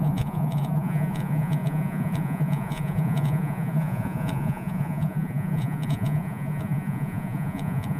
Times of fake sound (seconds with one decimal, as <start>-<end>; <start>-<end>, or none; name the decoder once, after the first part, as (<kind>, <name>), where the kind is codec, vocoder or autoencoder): 0.0-8.0 (vocoder, Vocos)